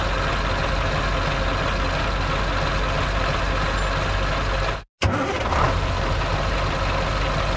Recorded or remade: recorded